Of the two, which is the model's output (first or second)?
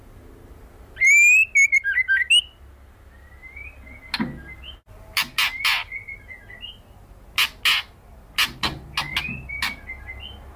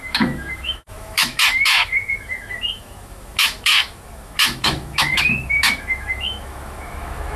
second